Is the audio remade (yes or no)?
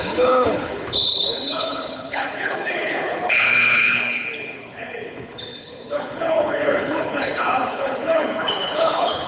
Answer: yes